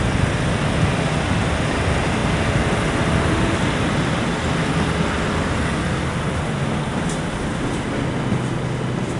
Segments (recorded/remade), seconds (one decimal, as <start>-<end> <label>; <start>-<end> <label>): 0.0-9.2 recorded